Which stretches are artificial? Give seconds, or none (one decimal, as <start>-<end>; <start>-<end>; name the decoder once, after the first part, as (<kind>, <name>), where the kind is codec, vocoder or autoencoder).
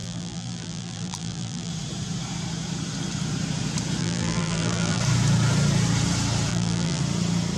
0.0-1.7 (vocoder, BigVGAN v2); 4.0-5.0; 6.5-7.0